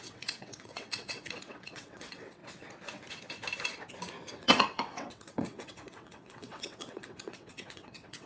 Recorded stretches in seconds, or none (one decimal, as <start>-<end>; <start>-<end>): 2.4-4.3